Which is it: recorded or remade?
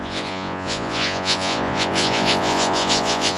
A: remade